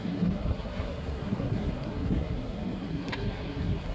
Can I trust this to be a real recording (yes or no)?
no